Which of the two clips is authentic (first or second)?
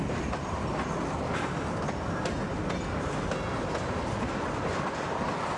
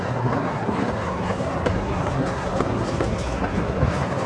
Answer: first